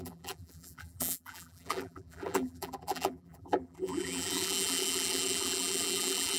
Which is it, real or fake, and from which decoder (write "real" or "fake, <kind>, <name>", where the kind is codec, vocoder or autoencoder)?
fake, vocoder, BigVGAN v2